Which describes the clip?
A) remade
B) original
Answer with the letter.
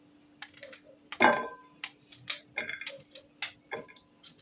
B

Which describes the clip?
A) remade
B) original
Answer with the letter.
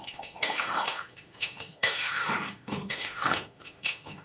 A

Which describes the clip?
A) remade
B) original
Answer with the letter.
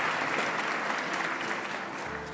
B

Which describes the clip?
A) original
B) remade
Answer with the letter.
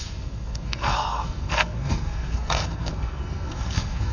B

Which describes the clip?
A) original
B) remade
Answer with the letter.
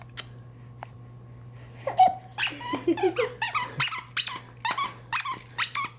A